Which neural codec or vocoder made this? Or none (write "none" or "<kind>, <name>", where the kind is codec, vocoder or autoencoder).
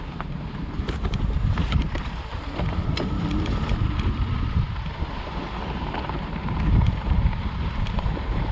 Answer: vocoder, BigVGAN v2